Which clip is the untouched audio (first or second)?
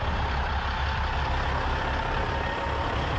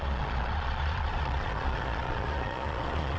first